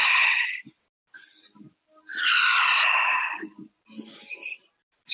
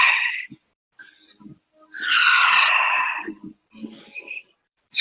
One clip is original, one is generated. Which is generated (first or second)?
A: second